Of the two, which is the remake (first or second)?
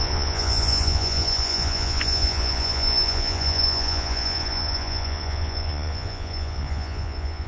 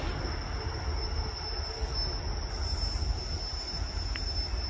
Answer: first